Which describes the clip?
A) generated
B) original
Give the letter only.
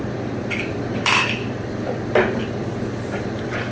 A